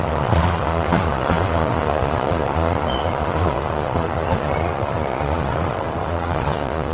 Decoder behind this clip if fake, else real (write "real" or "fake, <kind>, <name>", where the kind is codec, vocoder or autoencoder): fake, vocoder, Vocos